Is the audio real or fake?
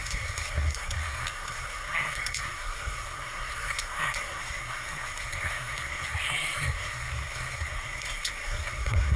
fake